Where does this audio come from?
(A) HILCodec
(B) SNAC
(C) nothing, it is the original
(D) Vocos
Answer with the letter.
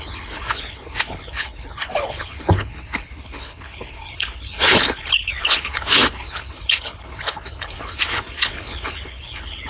A